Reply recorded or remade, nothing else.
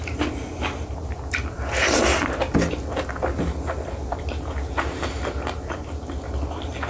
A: recorded